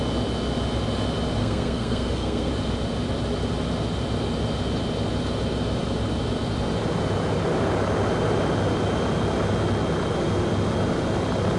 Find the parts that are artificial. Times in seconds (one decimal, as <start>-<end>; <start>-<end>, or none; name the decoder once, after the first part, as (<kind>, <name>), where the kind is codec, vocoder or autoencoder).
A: 1.4-2.5 (codec, SNAC)